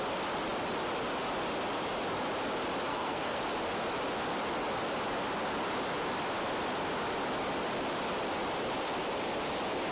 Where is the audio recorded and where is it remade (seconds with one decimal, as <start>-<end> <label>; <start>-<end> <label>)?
0.0-2.9 recorded; 2.9-3.4 remade; 3.4-9.9 recorded